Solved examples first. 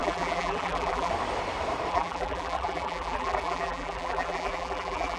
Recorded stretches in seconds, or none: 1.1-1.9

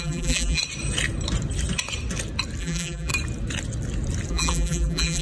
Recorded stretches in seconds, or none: 0.6-2.6; 3.1-4.3

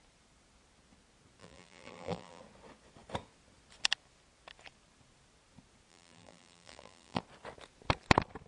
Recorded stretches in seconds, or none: 0.0-1.4; 2.4-5.9; 7.2-8.5

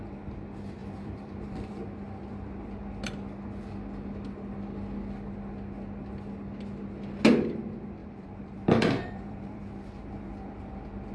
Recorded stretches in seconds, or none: 0.0-0.8; 1.8-8.0; 10.1-11.1

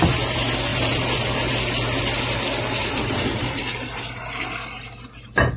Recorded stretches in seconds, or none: 0.0-0.7; 1.5-2.8; 3.6-5.6